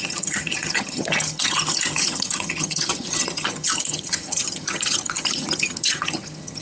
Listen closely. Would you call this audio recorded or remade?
remade